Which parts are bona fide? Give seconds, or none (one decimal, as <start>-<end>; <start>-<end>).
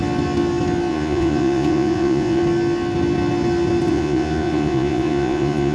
0.0-0.9; 2.4-3.9